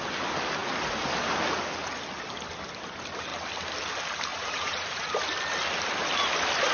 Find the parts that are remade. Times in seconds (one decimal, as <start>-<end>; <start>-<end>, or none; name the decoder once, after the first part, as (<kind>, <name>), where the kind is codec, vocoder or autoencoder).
4.3-5.1 (vocoder, Vocos)